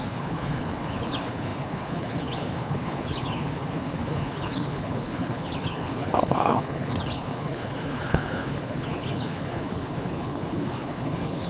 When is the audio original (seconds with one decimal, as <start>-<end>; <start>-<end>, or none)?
none